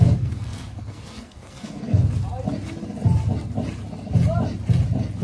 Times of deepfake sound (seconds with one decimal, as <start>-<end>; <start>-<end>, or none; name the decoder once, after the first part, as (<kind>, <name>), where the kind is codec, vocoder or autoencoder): 0.0-2.0 (codec, SNAC)